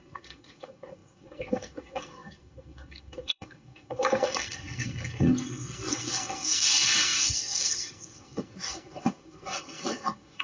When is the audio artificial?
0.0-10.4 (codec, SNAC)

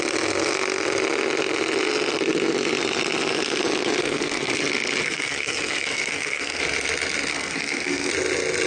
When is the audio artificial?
4.0-4.5 (codec, SNAC); 5.0-6.6; 7.3-8.1